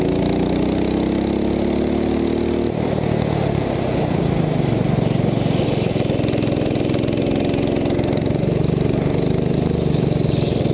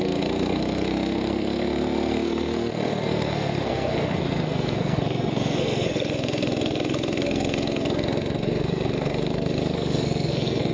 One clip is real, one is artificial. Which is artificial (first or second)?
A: second